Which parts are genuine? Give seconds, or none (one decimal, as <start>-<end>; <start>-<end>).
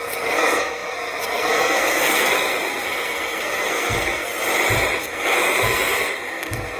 4.3-5.0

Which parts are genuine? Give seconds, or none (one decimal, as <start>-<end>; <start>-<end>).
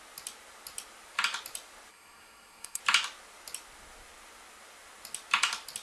0.0-1.9; 2.8-5.8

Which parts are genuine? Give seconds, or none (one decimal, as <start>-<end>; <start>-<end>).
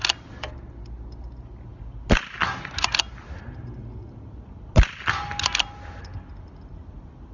0.0-7.3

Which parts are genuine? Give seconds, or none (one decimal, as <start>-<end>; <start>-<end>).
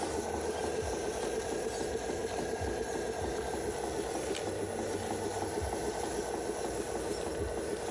0.0-7.9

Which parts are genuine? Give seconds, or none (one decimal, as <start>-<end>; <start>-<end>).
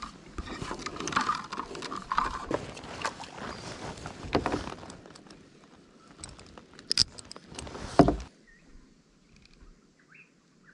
0.0-7.0; 8.7-10.7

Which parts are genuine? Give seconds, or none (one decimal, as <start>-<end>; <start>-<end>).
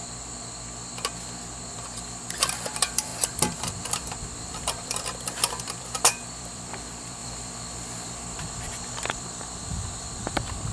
0.0-1.7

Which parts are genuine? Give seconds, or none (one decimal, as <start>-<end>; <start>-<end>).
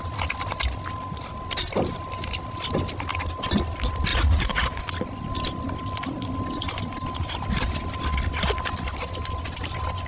0.0-4.1; 4.8-10.1